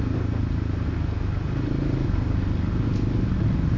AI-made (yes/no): no